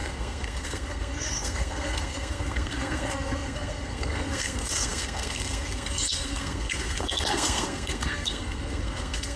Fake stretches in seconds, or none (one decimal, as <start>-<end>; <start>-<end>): 0.0-9.4